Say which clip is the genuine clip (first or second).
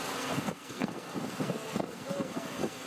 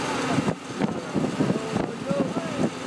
second